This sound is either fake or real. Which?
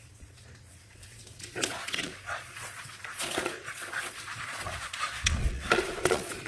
fake